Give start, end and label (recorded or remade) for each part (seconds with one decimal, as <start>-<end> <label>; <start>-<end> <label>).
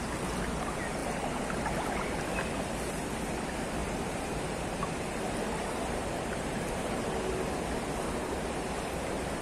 0.0-3.8 recorded; 3.8-7.1 remade; 7.1-9.4 recorded